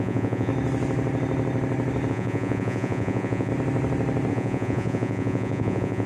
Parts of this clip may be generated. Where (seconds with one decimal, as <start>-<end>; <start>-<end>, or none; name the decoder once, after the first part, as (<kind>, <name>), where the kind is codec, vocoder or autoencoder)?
0.0-0.5 (vocoder, Vocos); 2.1-3.5; 4.3-6.1